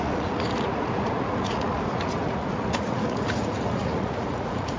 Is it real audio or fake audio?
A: fake